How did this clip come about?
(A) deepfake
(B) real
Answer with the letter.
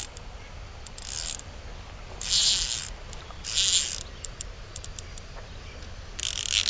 B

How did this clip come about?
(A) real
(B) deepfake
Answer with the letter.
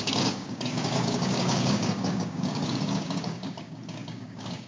B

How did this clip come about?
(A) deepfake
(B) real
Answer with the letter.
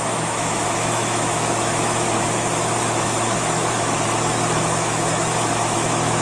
A